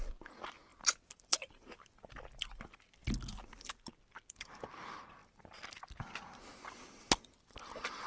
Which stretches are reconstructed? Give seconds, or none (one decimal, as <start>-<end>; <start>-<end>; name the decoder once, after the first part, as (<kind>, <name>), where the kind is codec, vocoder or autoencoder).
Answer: 0.7-2.1 (vocoder, BigVGAN v2)